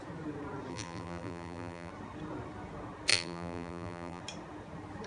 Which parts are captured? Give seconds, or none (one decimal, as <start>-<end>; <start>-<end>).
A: 0.0-0.7; 1.9-3.1; 4.2-5.1